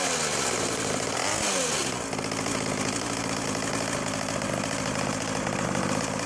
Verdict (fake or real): real